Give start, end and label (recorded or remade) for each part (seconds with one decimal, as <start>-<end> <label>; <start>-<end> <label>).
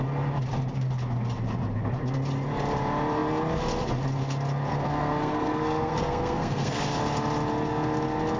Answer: 0.0-4.7 recorded; 4.7-6.8 remade; 6.8-8.4 recorded